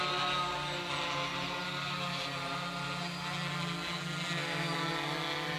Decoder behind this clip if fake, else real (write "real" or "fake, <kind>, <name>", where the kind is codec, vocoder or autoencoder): real